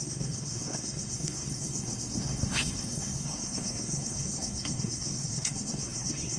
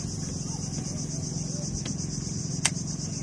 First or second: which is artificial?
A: first